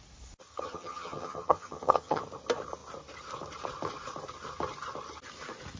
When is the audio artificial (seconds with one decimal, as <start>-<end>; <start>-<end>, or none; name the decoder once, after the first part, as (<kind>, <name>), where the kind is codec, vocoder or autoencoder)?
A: 0.5-2.2 (vocoder, HiFi-GAN)